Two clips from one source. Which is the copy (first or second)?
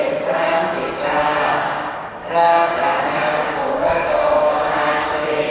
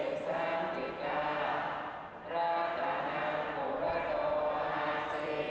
first